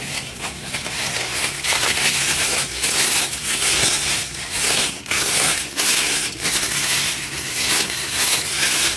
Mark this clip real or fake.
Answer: fake